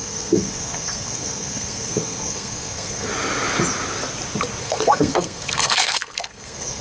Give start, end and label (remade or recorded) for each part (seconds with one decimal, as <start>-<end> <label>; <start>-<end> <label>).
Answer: 0.0-3.1 remade; 3.1-4.6 recorded; 4.6-6.8 remade